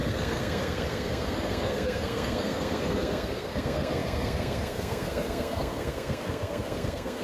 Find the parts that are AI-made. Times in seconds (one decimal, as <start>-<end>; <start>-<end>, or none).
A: 0.0-7.2